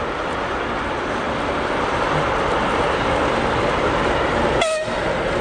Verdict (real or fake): fake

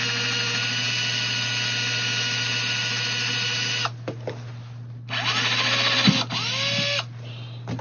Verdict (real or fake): real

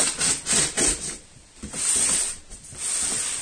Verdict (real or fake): real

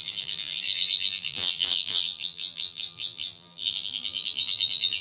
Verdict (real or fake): fake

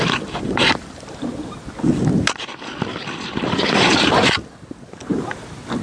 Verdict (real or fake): real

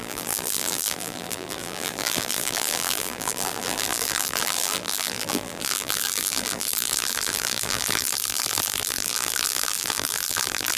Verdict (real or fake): fake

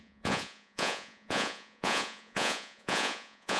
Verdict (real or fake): fake